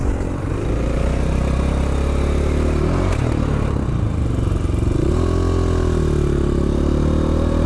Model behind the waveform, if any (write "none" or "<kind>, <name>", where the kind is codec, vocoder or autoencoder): none